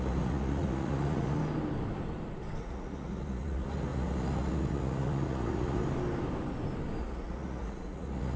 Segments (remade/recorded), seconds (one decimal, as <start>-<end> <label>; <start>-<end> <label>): 0.0-1.4 remade; 1.4-2.6 recorded; 2.6-5.8 remade; 5.8-7.0 recorded; 7.0-8.4 remade